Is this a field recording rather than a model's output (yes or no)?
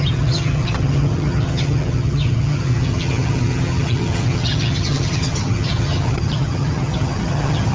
no